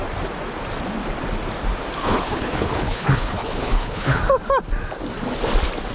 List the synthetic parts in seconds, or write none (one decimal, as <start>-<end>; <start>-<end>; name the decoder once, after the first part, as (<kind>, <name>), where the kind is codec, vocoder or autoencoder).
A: 2.0-4.2 (codec, HILCodec)